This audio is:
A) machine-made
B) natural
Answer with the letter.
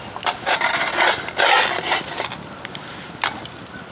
B